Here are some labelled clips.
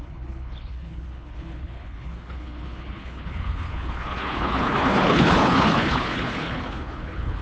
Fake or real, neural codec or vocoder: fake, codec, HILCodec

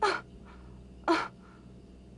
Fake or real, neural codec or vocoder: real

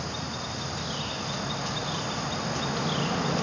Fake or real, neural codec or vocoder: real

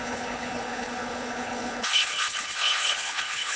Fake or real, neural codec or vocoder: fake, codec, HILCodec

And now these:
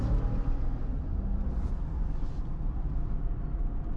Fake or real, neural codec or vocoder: real